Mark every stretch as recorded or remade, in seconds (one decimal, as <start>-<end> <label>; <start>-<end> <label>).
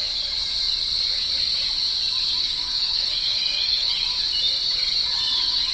0.0-2.4 recorded; 2.4-3.9 remade; 3.9-5.7 recorded